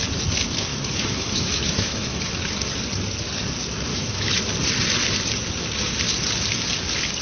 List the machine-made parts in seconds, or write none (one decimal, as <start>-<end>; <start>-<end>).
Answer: 0.7-2.3; 3.9-4.4